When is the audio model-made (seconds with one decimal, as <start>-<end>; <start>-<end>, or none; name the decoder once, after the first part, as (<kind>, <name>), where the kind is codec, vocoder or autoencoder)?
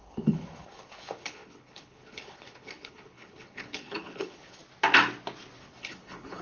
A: 0.0-4.6 (codec, HILCodec); 5.6-6.4